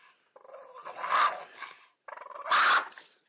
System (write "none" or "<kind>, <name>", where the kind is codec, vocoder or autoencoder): none